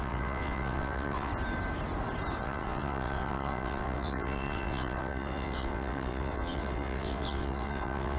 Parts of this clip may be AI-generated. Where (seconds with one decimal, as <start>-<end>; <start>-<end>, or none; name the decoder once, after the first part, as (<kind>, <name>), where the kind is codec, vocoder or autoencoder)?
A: 0.0-1.3 (vocoder, WaveNeXt); 2.4-8.2